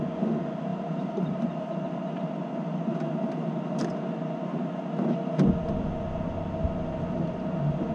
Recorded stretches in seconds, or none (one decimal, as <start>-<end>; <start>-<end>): 0.0-0.7; 1.5-7.9